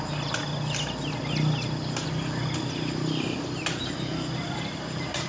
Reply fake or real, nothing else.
real